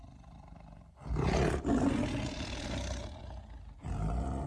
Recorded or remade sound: recorded